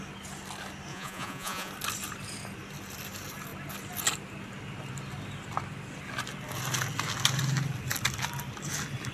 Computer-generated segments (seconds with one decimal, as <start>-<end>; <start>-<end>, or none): 0.9-1.7

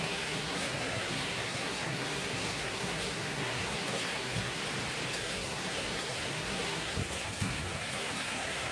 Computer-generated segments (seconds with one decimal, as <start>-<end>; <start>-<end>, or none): 0.0-4.6; 5.1-8.7

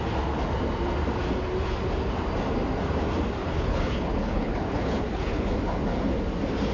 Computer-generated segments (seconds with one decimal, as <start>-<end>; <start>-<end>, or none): 3.4-5.5

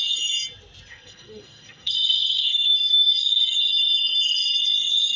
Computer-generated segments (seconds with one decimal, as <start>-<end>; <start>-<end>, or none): 0.9-3.1

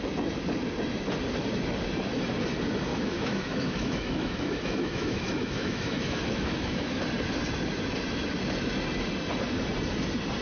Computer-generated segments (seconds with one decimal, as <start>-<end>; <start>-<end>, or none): 2.9-7.0

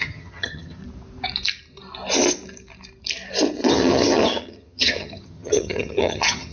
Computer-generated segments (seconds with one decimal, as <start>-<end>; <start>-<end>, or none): 0.0-0.8; 3.7-6.5

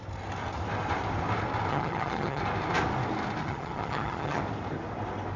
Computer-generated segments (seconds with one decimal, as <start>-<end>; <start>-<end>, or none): 1.7-2.4; 3.4-4.4